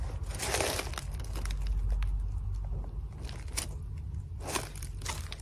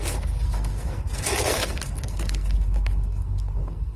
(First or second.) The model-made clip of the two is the second